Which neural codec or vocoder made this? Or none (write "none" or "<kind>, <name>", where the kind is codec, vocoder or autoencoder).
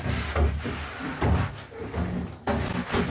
none